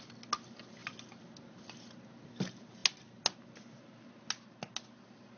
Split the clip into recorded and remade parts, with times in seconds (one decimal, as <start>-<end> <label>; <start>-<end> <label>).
0.0-5.4 recorded